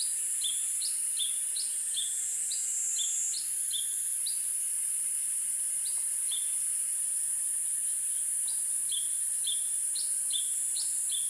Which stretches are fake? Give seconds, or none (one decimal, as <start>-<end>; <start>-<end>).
0.0-2.7; 5.6-11.3